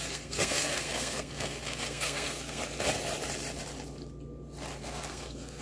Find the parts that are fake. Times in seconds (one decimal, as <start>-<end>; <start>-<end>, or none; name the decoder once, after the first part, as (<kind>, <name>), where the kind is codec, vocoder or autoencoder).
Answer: 0.0-2.6 (codec, SNAC); 4.8-5.6